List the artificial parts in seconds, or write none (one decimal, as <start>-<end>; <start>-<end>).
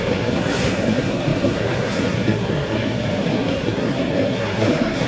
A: 0.0-5.1